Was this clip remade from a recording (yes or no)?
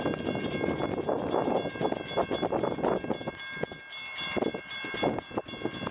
no